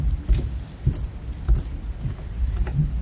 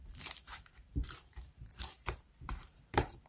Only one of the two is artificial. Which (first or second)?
second